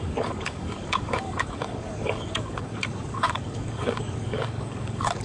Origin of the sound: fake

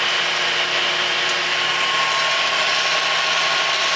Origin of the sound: real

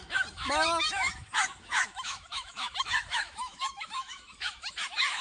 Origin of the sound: fake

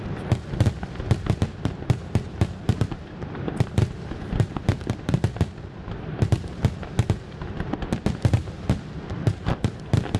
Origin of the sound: real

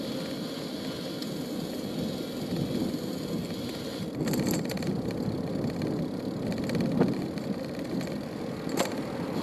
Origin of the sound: real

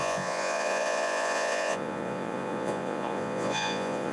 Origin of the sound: fake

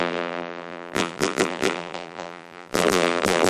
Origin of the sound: fake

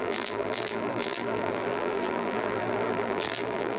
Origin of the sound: fake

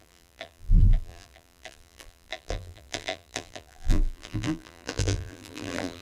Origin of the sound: fake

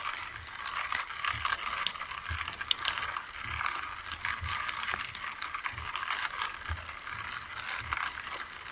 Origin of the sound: real